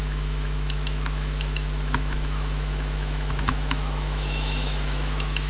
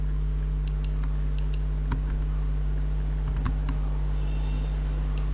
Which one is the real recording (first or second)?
second